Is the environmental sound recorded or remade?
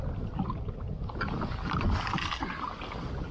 recorded